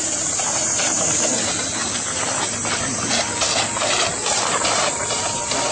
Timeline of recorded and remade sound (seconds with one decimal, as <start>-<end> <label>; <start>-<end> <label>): 0.0-1.8 remade; 1.8-4.6 recorded; 4.6-5.7 remade

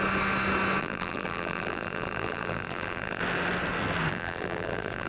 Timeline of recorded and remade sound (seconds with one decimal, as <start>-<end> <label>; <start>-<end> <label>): 0.0-0.8 recorded; 0.8-3.2 remade; 3.2-4.1 recorded; 4.1-5.1 remade

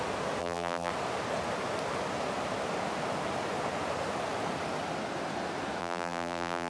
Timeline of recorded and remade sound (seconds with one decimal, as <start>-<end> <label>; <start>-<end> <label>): 0.0-0.4 recorded; 0.4-0.9 remade; 0.9-5.8 recorded; 5.8-6.7 remade

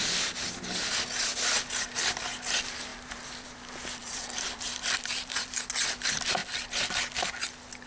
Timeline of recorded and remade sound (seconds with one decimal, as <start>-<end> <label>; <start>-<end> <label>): 0.0-2.9 recorded; 2.9-5.6 remade; 5.6-7.9 recorded

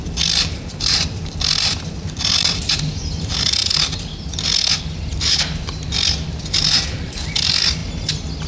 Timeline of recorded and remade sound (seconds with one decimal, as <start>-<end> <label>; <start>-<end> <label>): 0.0-3.6 remade; 3.6-4.8 recorded; 4.8-7.8 remade; 7.8-8.5 recorded